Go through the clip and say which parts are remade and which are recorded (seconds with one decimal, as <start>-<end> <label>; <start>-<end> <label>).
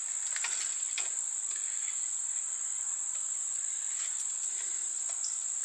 0.0-2.2 recorded; 2.2-4.9 remade; 4.9-5.6 recorded